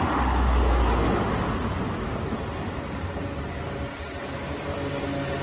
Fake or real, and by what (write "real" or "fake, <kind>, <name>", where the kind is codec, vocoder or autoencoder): real